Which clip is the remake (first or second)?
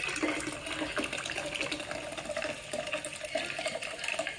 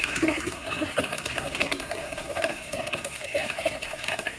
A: second